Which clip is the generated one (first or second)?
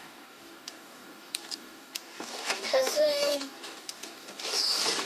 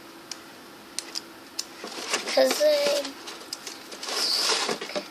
first